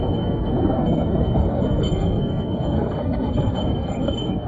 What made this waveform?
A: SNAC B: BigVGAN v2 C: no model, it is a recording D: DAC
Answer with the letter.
A